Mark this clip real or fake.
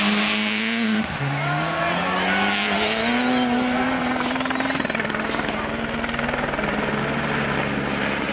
real